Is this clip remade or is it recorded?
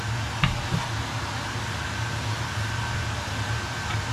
recorded